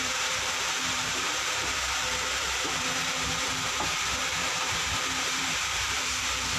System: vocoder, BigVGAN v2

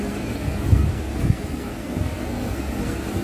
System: codec, SNAC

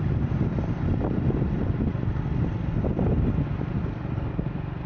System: none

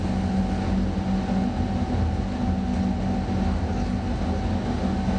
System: none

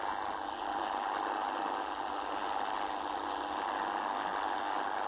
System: none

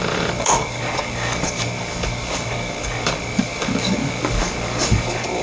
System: codec, DAC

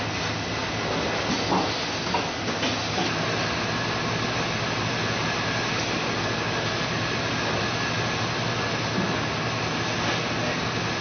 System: none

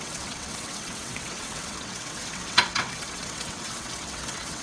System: vocoder, WaveNeXt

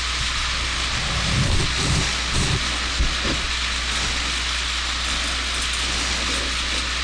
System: none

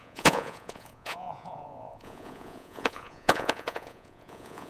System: vocoder, Vocos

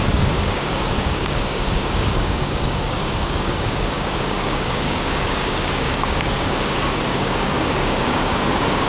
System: codec, DAC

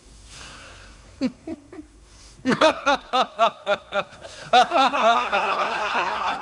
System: codec, SNAC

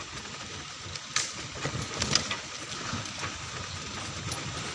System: none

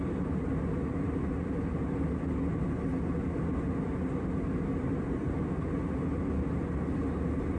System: none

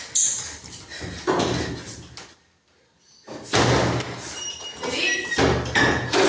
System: none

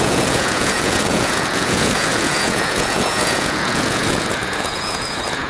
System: vocoder, Vocos